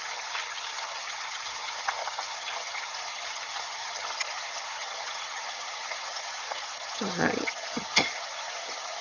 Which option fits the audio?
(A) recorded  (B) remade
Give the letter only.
B